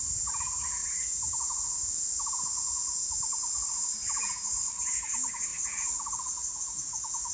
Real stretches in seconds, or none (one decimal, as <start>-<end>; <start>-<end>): 0.8-1.4